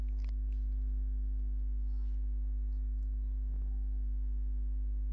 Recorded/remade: recorded